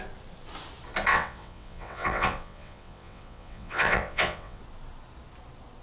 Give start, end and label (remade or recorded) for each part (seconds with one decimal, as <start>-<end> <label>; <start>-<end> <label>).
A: 0.0-1.1 recorded; 1.1-4.6 remade; 4.6-5.8 recorded